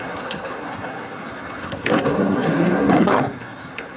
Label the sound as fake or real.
fake